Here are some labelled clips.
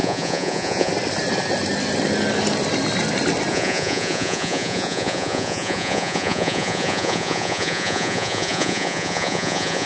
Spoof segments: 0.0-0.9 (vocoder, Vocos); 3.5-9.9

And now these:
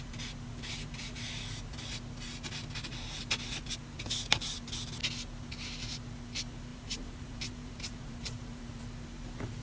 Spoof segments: 6.7-8.8 (vocoder, BigVGAN v2)

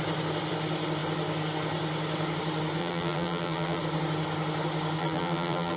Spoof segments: 2.8-3.8 (vocoder, BigVGAN v2); 5.0-5.8

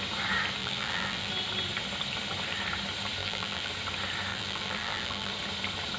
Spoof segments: 0.6-1.3 (vocoder, BigVGAN v2); 3.2-3.7; 4.3-5.3

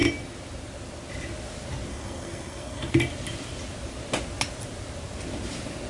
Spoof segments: 1.9-2.9 (codec, SNAC)

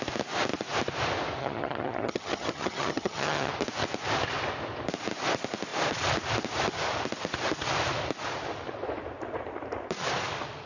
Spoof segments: 1.4-3.5 (vocoder, HiFi-GAN)